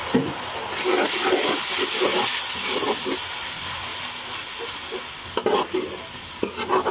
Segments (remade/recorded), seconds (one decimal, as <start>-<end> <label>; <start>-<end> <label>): 0.0-6.9 recorded